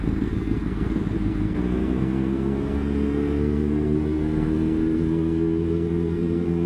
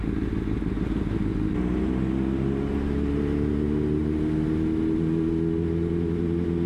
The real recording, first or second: second